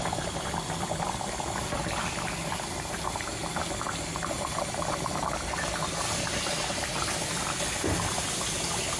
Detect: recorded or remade recorded